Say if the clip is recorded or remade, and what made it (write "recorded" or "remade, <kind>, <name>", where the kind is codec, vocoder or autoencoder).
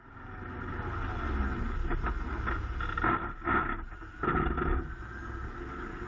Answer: recorded